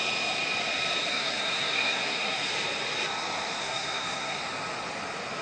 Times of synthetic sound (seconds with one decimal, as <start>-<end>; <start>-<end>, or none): 1.1-2.5; 3.6-4.4